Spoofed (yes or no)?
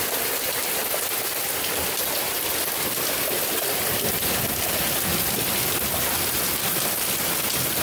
no